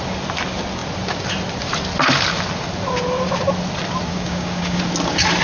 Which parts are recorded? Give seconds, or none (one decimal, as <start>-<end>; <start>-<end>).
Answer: 0.0-4.1; 4.8-5.4